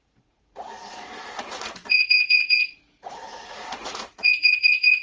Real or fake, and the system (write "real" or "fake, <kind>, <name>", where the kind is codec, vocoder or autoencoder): fake, vocoder, Vocos